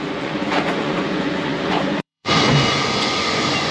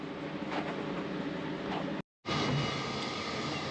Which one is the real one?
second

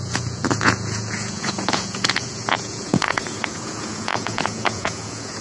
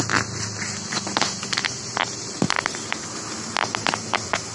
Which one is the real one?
second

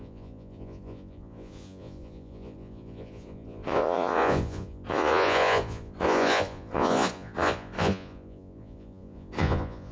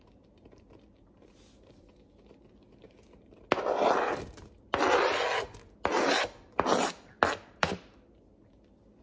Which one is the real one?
second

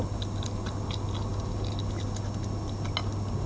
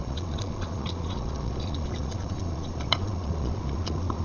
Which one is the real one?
first